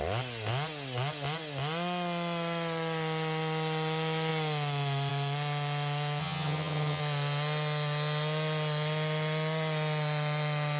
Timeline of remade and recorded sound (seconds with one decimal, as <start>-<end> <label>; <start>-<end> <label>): 0.0-6.2 recorded; 6.2-7.0 remade; 7.0-10.8 recorded